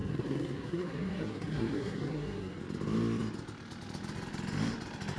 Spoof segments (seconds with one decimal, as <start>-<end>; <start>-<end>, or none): 0.0-2.6